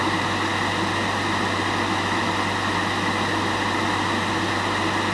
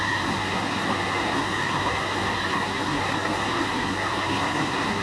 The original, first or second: first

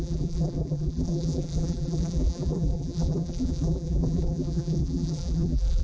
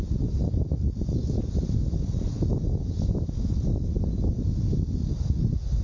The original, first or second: second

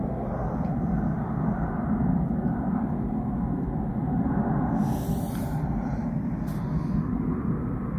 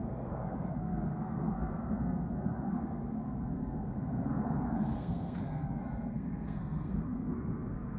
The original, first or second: first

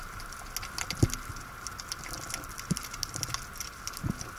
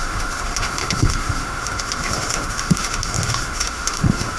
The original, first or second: first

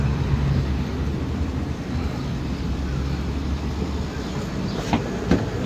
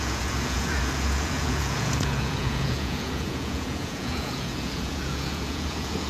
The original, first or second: first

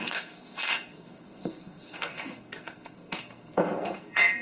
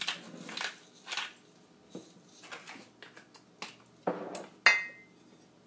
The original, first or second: second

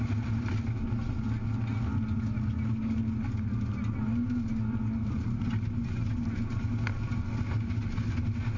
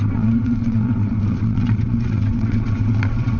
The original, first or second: first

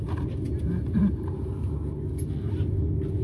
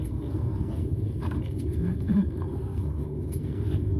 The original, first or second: first